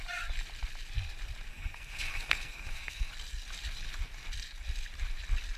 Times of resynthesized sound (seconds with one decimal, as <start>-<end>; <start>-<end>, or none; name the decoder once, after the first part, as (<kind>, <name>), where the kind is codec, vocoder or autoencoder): 1.5-3.1 (codec, SNAC)